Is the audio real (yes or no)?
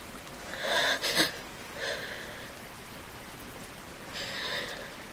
yes